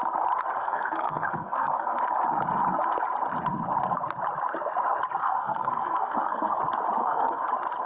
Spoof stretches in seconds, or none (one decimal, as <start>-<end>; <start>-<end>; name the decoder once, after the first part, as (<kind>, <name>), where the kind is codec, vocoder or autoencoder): 0.6-2.0 (codec, SNAC); 5.2-6.6; 7.0-7.5

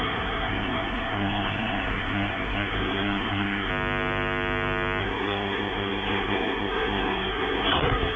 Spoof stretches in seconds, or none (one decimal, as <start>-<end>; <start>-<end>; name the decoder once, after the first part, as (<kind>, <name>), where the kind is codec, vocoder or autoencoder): 0.0-3.7 (codec, SNAC); 5.0-8.2

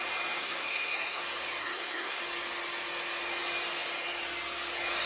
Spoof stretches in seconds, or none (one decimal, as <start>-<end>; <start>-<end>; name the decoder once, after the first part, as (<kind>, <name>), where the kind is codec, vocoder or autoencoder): 0.4-1.2 (codec, SNAC); 1.6-2.2

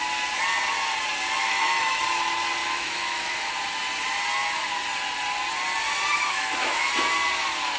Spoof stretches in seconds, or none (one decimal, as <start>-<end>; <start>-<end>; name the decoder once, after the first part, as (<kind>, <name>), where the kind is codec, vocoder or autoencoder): 1.4-2.0 (autoencoder, DAC-VAE); 2.6-3.5; 6.1-6.9